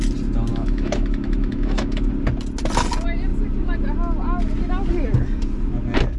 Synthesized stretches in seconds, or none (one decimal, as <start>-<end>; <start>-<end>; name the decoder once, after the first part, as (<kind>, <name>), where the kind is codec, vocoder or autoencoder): 0.5-2.1 (autoencoder, DAC-VAE)